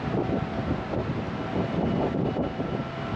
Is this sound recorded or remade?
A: recorded